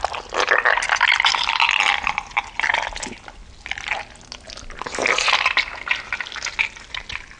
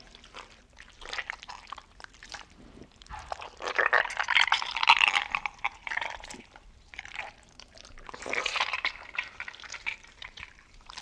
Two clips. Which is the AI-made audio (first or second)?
second